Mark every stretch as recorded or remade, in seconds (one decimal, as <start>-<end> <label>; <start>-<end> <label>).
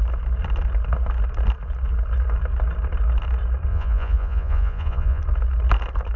0.0-3.7 recorded; 3.7-5.2 remade; 5.2-6.2 recorded